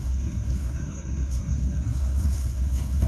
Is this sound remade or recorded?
remade